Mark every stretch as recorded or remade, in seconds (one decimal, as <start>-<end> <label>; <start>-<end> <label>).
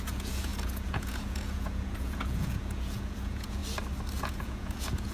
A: 0.0-3.6 remade; 3.6-4.2 recorded; 4.2-5.1 remade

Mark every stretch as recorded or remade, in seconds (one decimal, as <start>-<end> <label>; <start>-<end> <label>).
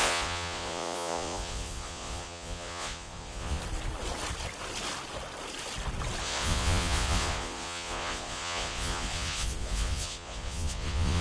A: 0.0-3.6 remade; 3.6-6.2 recorded; 6.2-11.2 remade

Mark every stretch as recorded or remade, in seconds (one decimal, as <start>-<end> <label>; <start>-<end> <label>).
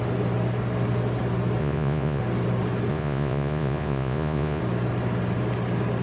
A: 0.0-1.6 recorded; 1.6-2.2 remade; 2.2-2.9 recorded; 2.9-4.6 remade; 4.6-6.0 recorded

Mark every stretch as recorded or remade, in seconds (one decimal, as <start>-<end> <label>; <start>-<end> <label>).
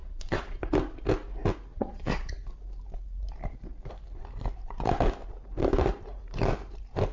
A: 0.0-0.7 remade; 0.7-1.7 recorded; 1.7-2.3 remade; 2.3-7.1 recorded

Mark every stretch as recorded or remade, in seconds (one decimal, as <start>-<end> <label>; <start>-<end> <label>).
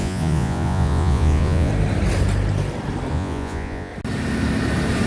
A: 0.0-1.7 remade; 1.7-3.1 recorded; 3.1-3.9 remade; 3.9-5.1 recorded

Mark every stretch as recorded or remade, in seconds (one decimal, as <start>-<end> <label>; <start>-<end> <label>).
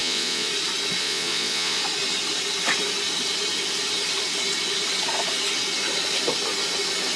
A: 0.0-0.5 remade; 0.5-1.0 recorded; 1.0-1.8 remade; 1.8-7.2 recorded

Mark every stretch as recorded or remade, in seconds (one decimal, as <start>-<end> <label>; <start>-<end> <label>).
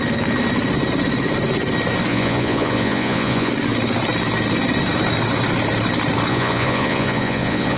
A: 0.0-2.1 recorded; 2.1-3.5 remade; 3.5-6.3 recorded; 6.3-7.8 remade